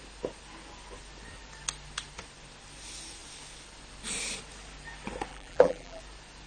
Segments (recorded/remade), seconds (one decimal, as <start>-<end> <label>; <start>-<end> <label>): 0.0-5.3 recorded; 5.3-6.0 remade; 6.0-6.5 recorded

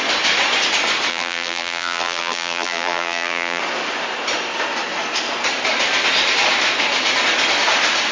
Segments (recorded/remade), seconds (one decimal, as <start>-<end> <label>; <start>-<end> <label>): 0.0-1.1 recorded; 1.1-3.6 remade; 3.6-8.1 recorded

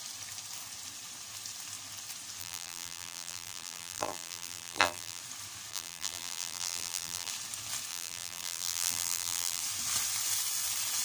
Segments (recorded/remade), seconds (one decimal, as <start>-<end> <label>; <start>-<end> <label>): 0.0-2.4 recorded; 2.4-5.2 remade; 5.2-5.7 recorded; 5.7-7.3 remade; 7.3-7.9 recorded; 7.9-9.6 remade; 9.6-11.0 recorded